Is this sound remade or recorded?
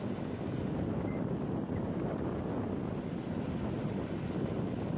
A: recorded